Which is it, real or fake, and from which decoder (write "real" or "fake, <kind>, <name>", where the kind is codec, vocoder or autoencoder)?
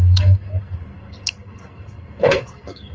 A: fake, codec, SNAC